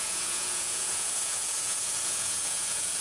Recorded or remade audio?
remade